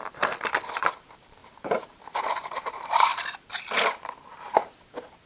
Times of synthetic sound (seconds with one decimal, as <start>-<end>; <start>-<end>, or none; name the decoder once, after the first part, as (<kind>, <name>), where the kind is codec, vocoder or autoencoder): 0.8-3.1 (vocoder, BigVGAN v2); 4.4-5.3

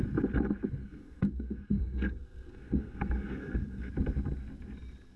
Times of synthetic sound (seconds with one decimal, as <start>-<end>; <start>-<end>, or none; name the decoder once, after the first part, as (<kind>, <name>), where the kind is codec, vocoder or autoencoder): 0.8-3.9 (codec, SNAC)

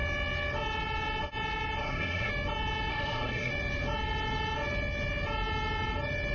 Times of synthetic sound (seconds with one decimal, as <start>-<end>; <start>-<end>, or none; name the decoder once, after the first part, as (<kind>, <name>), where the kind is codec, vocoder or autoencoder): 1.8-2.3 (codec, SNAC); 2.9-3.5

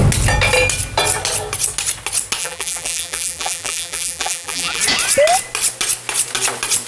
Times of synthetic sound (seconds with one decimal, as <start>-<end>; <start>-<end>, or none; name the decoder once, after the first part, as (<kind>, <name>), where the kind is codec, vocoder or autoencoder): 2.4-4.8 (vocoder, BigVGAN v2)

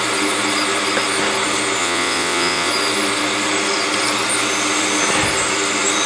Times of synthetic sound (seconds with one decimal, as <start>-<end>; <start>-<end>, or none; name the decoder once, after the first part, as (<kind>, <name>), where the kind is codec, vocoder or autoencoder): 1.8-2.7 (vocoder, WaveNeXt)

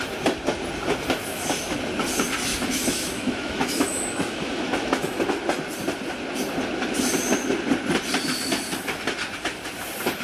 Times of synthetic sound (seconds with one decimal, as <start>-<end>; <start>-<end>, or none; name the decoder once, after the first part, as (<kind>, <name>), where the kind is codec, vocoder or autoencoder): 2.5-5.2 (autoencoder, DAC-VAE)